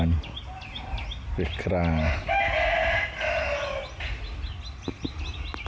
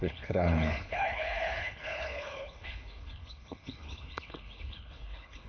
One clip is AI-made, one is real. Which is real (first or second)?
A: first